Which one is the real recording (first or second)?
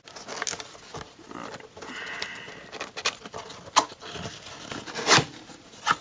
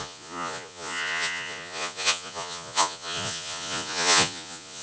first